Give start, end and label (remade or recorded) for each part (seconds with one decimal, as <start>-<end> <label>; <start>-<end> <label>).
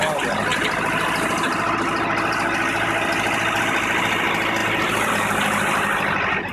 0.0-6.5 recorded